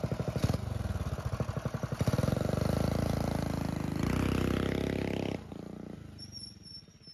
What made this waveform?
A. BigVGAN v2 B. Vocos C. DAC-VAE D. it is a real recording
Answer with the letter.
D